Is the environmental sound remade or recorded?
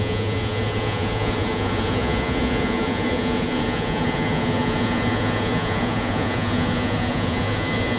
remade